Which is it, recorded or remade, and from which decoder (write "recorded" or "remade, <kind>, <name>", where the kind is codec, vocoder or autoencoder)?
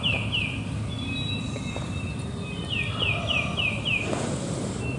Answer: recorded